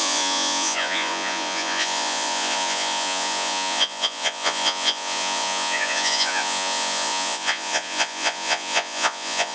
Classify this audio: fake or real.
fake